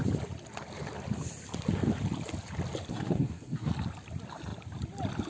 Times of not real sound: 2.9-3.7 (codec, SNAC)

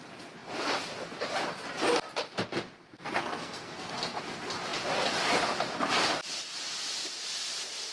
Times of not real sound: 2.8-3.9 (codec, SNAC)

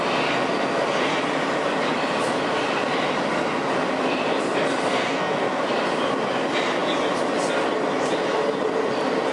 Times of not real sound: 4.9-5.6 (codec, SNAC)

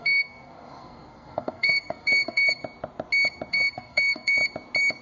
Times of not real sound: 0.0-2.6 (codec, SNAC); 3.5-4.4

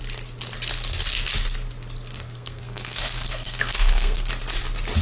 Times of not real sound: 2.1-4.3 (codec, SNAC)

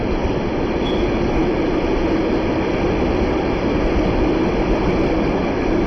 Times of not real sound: none

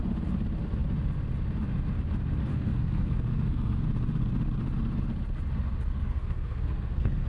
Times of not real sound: 2.5-3.8 (codec, SNAC); 5.9-7.3